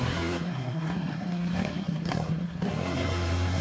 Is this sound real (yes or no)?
no